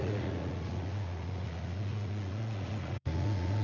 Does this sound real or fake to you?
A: fake